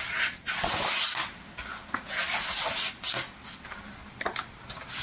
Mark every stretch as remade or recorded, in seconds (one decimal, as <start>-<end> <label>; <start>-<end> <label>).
0.0-5.0 recorded